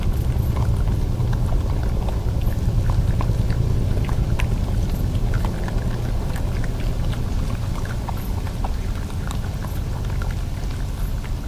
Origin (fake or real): real